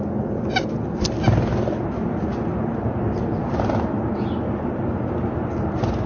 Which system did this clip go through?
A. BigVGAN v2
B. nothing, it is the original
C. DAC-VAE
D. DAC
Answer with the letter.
B